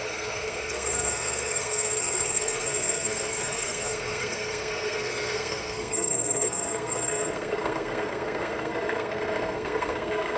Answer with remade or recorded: remade